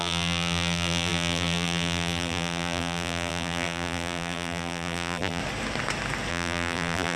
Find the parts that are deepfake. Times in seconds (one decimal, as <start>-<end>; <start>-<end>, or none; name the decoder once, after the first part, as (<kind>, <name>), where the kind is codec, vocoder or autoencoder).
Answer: 0.0-5.4 (vocoder, BigVGAN v2); 6.3-7.2